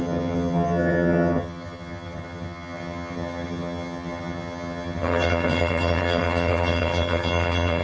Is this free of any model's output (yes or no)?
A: no